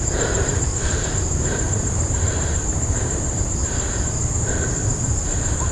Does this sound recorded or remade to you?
remade